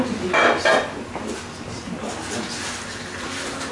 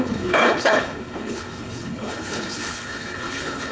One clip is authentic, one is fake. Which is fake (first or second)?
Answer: second